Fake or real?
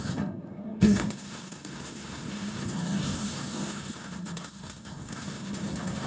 fake